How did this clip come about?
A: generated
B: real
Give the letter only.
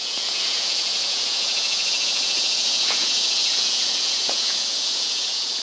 A